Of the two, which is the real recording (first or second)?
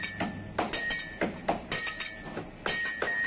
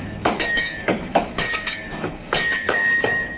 first